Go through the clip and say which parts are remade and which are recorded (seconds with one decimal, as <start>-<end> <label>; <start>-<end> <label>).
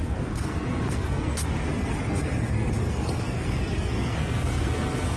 0.0-5.2 remade